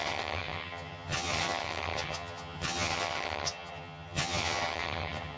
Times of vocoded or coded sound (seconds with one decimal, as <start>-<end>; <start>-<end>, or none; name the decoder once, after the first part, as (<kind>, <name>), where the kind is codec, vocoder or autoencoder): 0.0-5.4 (vocoder, HiFi-GAN)